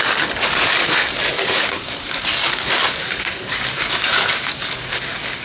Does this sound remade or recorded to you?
remade